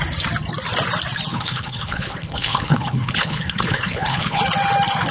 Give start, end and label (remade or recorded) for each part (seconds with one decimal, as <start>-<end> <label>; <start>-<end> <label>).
0.0-1.3 recorded; 1.3-4.4 remade; 4.4-5.1 recorded